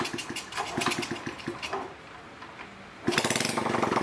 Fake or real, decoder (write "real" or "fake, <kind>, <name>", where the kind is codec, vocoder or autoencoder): real